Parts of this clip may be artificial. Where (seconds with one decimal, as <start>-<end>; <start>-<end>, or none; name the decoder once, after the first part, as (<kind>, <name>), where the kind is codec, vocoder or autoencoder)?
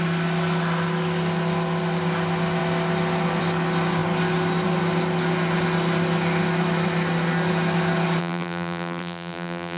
8.2-9.8 (vocoder, BigVGAN v2)